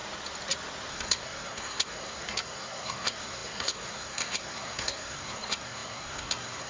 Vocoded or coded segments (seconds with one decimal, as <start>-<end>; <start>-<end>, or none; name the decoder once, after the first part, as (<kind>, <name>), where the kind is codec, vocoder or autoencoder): 0.9-6.7 (codec, SNAC)